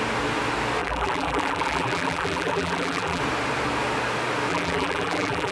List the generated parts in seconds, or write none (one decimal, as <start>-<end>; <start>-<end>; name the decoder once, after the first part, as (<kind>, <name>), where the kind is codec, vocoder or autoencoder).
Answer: 0.8-3.2 (vocoder, BigVGAN v2); 4.5-5.5